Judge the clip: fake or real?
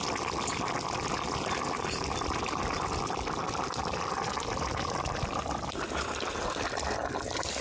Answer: real